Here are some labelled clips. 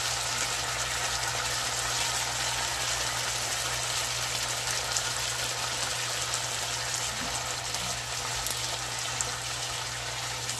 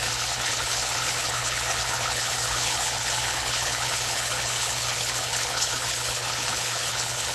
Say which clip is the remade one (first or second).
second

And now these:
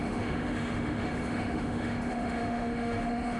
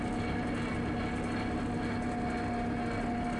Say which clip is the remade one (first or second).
first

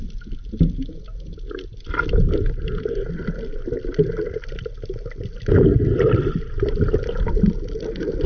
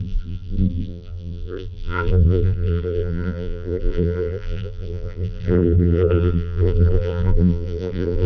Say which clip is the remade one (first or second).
second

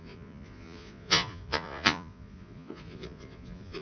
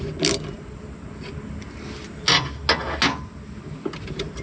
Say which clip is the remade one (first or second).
first